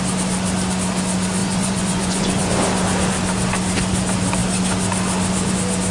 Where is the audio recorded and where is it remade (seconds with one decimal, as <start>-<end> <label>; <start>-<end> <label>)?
0.0-1.4 recorded; 1.4-2.5 remade; 2.5-5.9 recorded